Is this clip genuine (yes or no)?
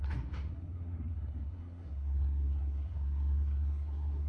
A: no